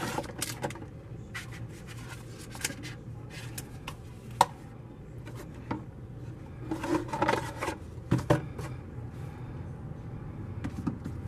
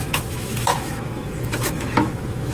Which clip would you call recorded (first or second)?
first